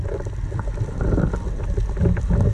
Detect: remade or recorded recorded